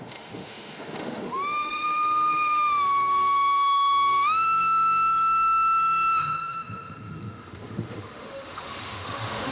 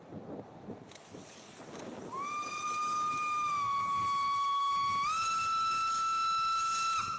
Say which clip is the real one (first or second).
second